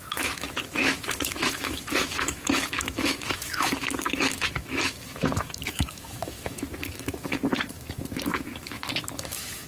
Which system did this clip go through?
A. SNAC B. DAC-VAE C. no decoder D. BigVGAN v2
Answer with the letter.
B